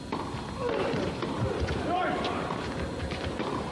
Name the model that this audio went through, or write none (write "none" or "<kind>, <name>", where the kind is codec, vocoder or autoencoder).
none